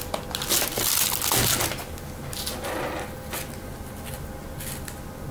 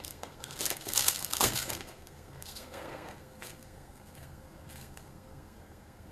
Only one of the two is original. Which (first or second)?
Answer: first